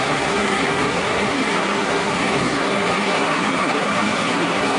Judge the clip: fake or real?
fake